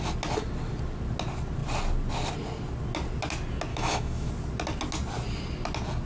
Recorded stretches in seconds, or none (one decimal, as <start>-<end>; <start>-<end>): 0.0-3.7; 4.3-6.1